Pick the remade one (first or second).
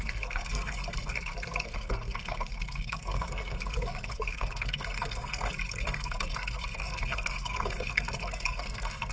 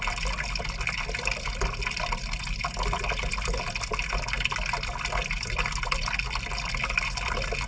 first